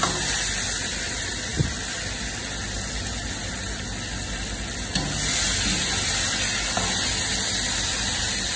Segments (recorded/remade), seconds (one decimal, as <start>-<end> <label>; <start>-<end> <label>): 0.0-7.3 recorded; 7.3-8.2 remade; 8.2-8.6 recorded